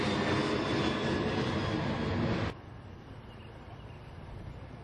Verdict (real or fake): real